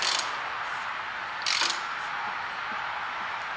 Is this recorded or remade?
recorded